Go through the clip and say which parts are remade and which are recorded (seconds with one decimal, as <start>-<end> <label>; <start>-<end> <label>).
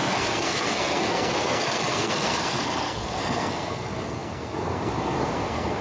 0.0-5.8 remade